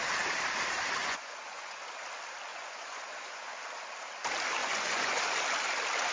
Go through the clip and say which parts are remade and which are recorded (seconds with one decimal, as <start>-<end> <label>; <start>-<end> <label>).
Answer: 0.0-1.0 recorded; 1.0-1.8 remade; 1.8-2.5 recorded; 2.5-3.6 remade; 3.6-4.6 recorded; 4.6-5.2 remade; 5.2-6.1 recorded